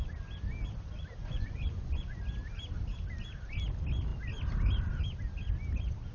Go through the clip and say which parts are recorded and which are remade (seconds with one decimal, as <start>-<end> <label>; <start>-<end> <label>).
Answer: 0.0-1.2 recorded; 1.2-2.2 remade; 2.2-6.1 recorded